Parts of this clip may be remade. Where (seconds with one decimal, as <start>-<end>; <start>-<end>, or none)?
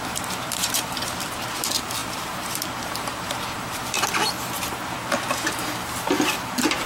0.0-3.8; 4.4-6.9